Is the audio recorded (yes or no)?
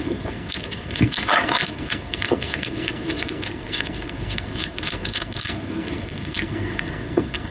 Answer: no